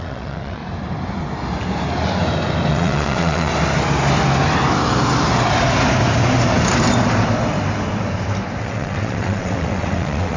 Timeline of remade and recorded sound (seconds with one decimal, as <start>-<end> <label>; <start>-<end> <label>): 0.0-0.6 remade; 0.6-2.7 recorded; 2.7-3.5 remade; 3.5-8.6 recorded; 8.6-10.4 remade